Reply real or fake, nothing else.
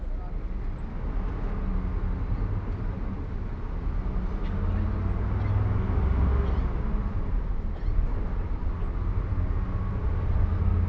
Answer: real